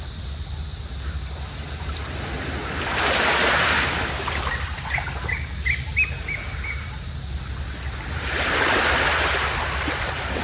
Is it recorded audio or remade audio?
recorded